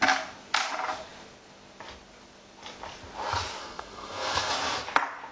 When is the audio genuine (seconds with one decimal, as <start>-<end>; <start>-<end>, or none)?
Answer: 0.0-3.6; 4.5-5.3